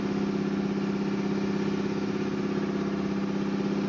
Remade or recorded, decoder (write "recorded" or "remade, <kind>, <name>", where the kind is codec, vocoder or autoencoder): recorded